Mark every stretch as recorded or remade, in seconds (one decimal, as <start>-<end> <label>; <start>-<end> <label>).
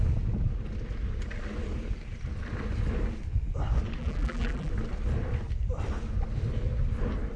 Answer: 0.0-4.0 recorded; 4.0-4.7 remade; 4.7-7.4 recorded